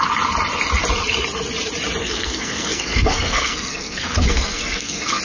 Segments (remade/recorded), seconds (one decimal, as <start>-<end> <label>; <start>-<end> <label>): 0.0-2.0 recorded; 2.0-5.2 remade